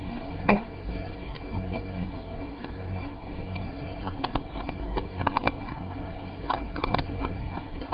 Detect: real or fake fake